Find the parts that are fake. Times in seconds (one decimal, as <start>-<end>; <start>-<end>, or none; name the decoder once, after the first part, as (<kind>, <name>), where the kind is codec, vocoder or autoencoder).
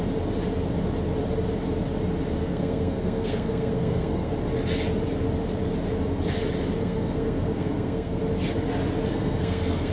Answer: 2.4-4.3 (codec, SNAC); 6.8-8.2; 9.1-9.9